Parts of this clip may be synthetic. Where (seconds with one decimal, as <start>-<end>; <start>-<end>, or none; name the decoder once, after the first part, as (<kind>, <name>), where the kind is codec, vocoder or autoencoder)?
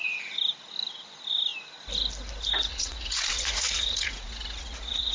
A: 2.7-5.1 (vocoder, Vocos)